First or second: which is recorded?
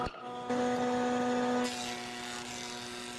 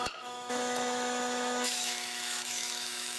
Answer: first